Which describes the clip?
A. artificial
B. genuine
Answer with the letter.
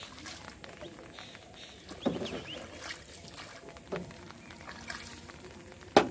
B